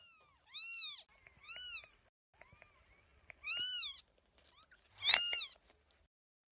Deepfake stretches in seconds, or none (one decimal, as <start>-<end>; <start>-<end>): none